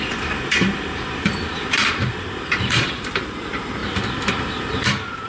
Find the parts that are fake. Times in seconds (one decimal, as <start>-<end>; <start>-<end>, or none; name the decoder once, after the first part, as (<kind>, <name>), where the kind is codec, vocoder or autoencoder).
0.0-3.8 (vocoder, BigVGAN v2); 4.6-5.3